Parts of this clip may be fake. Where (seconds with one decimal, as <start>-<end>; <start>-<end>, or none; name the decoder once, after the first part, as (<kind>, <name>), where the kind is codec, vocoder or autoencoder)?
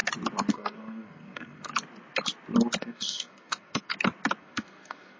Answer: 0.5-1.7 (codec, SNAC); 2.8-3.9; 4.4-5.2